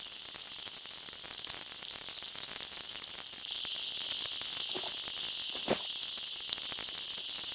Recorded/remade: recorded